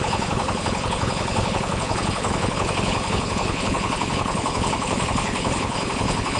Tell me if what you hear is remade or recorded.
remade